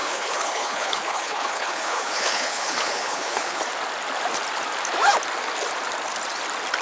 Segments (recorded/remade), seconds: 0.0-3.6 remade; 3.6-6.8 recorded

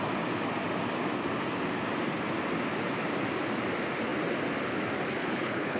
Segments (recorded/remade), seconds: 0.0-5.2 recorded; 5.2-5.8 remade